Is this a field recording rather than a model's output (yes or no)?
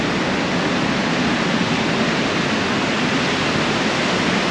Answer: yes